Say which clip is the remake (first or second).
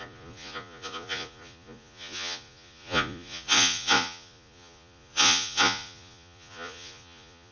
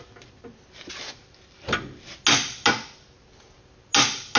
first